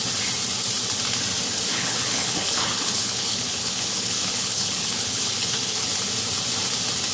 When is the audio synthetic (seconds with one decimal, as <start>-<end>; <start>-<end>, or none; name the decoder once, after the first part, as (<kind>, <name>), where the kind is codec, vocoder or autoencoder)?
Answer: 1.7-5.9 (codec, HILCodec)